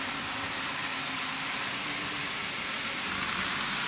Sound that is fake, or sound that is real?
real